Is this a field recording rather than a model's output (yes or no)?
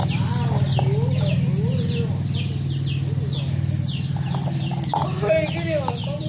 yes